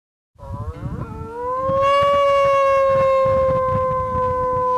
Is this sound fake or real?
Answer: real